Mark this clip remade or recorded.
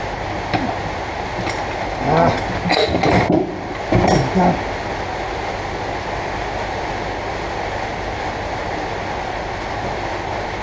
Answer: recorded